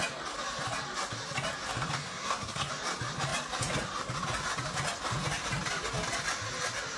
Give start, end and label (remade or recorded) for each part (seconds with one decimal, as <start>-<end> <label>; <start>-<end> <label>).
0.0-2.0 recorded; 2.0-2.7 remade; 2.7-7.0 recorded